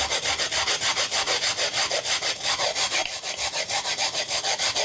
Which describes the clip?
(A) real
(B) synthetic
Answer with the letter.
A